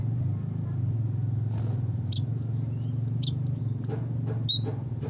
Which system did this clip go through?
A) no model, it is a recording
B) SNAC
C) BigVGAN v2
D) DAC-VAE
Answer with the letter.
A